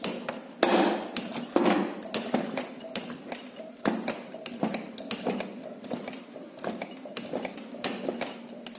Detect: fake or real real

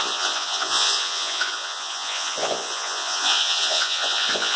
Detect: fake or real fake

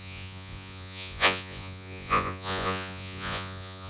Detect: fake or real fake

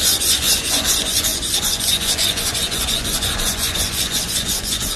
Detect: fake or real fake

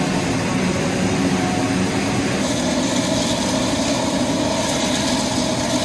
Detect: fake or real real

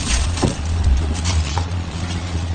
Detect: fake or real fake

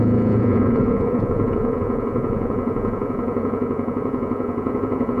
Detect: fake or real fake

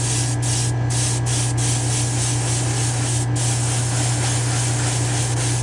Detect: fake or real real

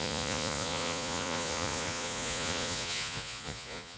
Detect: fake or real fake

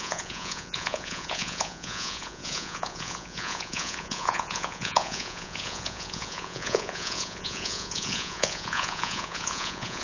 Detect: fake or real fake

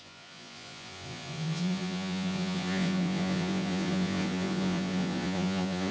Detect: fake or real fake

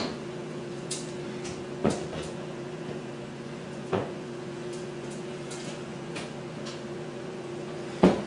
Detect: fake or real fake